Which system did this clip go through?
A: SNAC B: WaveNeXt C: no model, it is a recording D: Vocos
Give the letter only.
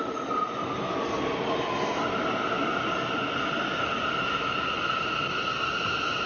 C